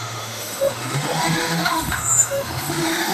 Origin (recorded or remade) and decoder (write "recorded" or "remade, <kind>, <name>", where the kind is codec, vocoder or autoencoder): remade, autoencoder, DAC-VAE